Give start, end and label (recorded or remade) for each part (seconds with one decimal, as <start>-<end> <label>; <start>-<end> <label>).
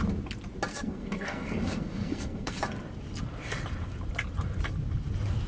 0.0-0.7 recorded; 0.7-2.6 remade; 2.6-5.5 recorded